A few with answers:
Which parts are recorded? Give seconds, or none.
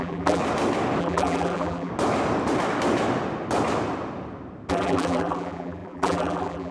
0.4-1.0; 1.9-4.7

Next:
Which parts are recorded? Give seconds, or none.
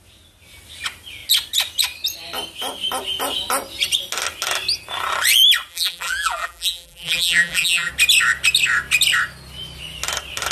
0.0-5.7; 7.9-10.5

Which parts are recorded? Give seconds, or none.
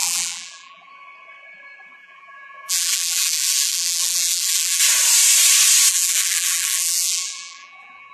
0.9-2.0; 4.8-5.9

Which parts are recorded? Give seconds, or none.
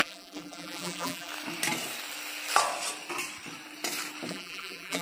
1.3-4.3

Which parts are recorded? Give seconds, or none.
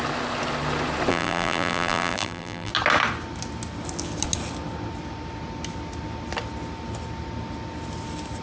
0.0-1.1; 2.7-8.4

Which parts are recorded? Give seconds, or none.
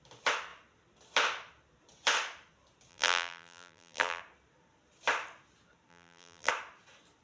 0.0-2.9; 4.2-5.9; 6.5-7.2